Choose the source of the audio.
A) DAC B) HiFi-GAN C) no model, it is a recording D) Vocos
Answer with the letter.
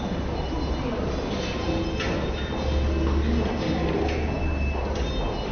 C